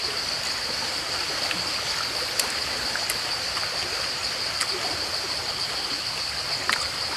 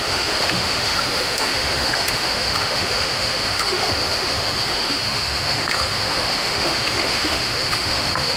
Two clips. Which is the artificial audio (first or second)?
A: second